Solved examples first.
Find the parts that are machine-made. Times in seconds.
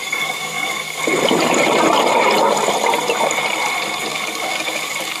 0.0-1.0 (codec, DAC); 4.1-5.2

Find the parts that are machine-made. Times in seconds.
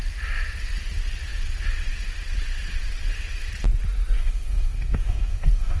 4.2-5.8 (codec, DAC)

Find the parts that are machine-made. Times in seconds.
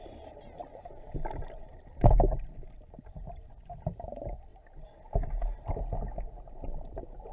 none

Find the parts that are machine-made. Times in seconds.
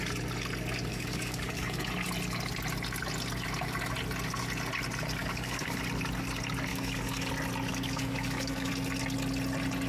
0.9-1.8 (codec, DAC); 5.2-5.8; 6.7-7.3; 7.7-8.7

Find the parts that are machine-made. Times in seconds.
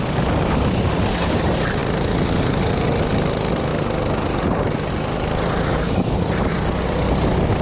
5.7-6.3 (codec, DAC)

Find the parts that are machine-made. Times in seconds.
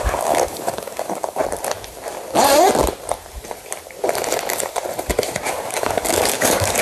0.0-1.4 (codec, DAC); 5.5-6.8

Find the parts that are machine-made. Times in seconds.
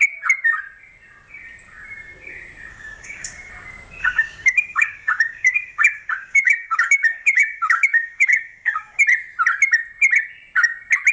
2.7-3.5 (codec, DAC); 4.0-9.0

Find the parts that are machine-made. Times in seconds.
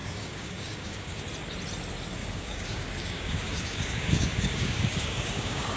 0.0-1.2 (codec, DAC); 2.2-5.8